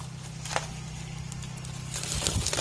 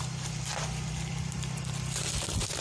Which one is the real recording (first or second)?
first